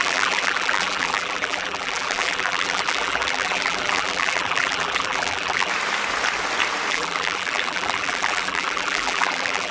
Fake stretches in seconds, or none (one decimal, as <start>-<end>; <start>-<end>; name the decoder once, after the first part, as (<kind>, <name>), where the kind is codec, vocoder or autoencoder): 0.0-5.7 (vocoder, BigVGAN v2); 6.9-9.7